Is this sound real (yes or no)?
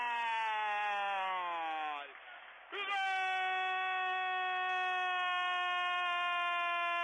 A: yes